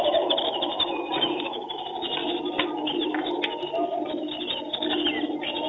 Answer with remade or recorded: recorded